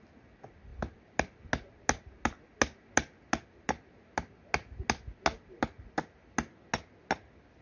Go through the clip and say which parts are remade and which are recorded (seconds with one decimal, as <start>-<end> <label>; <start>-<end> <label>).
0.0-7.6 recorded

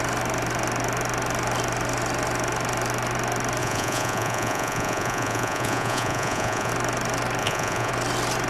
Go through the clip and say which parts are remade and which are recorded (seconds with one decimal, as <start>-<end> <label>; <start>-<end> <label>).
0.0-3.6 recorded; 3.6-6.7 remade; 6.7-7.4 recorded; 7.4-7.9 remade; 7.9-8.5 recorded

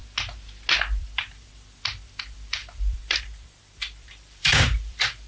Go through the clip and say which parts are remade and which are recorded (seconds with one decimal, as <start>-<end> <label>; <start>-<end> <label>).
0.0-1.0 recorded; 1.0-5.3 remade

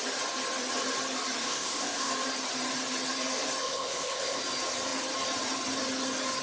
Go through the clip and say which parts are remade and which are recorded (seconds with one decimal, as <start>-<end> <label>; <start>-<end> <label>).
0.0-1.4 recorded; 1.4-2.1 remade; 2.1-3.6 recorded; 3.6-4.4 remade; 4.4-6.4 recorded

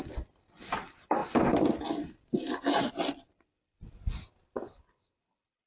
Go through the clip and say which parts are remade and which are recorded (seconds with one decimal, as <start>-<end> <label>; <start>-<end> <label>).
0.0-5.7 remade

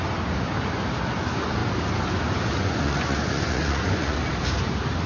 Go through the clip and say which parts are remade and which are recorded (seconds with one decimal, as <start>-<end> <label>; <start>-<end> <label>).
0.0-2.6 recorded; 2.6-4.2 remade; 4.2-5.1 recorded